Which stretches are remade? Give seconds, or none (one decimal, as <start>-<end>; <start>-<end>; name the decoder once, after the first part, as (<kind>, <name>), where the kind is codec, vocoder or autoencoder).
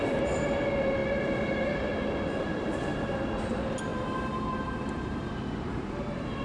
3.9-6.4 (vocoder, BigVGAN v2)